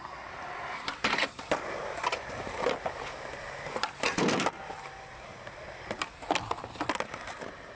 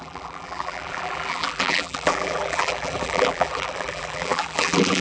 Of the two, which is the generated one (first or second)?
second